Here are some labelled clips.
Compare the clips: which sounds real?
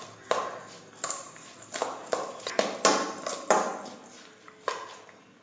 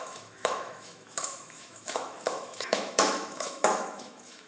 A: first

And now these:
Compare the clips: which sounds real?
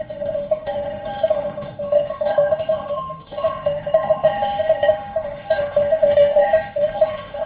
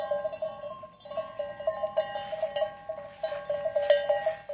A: second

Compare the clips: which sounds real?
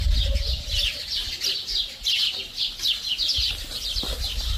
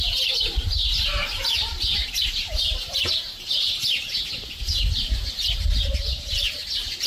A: first